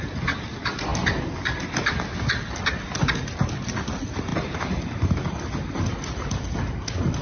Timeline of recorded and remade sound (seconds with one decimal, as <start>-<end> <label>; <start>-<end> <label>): 0.0-7.2 recorded